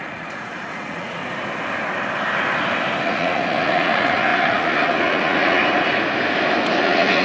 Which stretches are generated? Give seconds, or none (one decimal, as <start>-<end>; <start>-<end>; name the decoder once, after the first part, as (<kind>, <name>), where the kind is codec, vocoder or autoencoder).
0.0-1.2 (vocoder, Vocos); 3.0-5.6; 6.8-7.2